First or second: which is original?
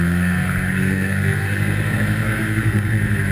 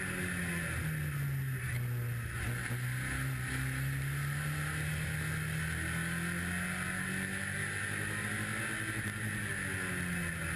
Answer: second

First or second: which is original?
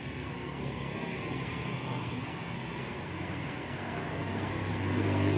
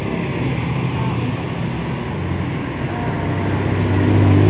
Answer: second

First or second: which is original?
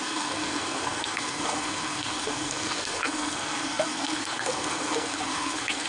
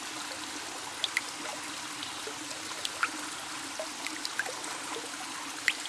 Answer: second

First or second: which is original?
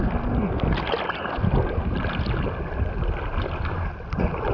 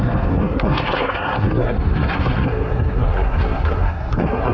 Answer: first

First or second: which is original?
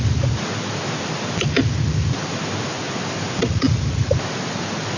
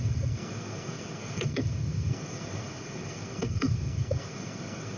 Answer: first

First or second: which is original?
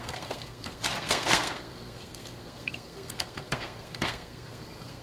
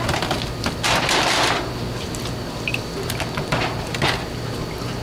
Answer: second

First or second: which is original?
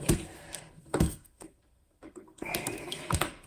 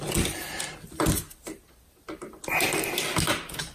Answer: second